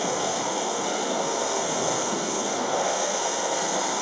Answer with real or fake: fake